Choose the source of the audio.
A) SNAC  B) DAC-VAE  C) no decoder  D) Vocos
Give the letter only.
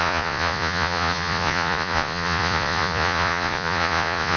D